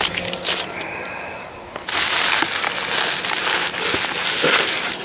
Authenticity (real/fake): real